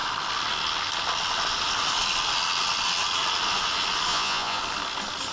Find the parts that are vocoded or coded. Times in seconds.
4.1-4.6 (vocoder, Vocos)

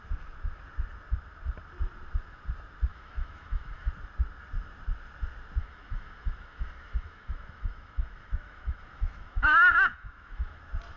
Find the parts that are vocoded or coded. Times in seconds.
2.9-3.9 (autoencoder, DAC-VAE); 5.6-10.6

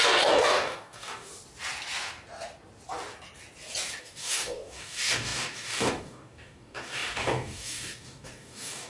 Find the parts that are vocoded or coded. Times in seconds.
0.0-1.3 (codec, DAC); 4.0-8.9

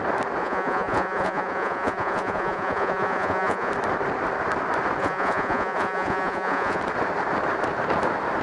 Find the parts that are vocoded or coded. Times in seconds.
0.4-3.7 (vocoder, Vocos); 5.0-6.8

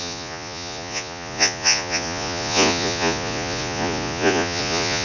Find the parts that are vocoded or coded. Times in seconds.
0.0-5.0 (vocoder, Vocos)

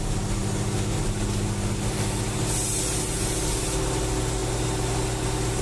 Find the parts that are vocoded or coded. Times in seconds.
none

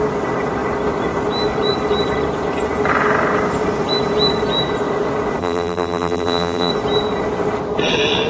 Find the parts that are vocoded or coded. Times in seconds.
5.4-6.7 (vocoder, BigVGAN v2)